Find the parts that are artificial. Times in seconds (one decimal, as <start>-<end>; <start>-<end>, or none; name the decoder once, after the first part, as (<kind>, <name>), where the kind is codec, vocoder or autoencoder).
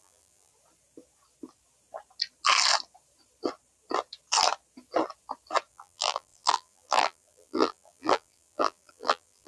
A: 0.0-0.5 (vocoder, BigVGAN v2); 5.7-9.5